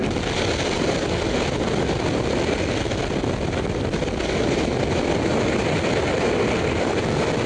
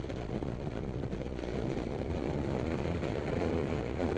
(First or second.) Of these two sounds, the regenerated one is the second